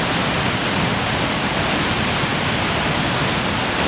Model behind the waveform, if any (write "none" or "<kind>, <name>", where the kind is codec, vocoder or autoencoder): none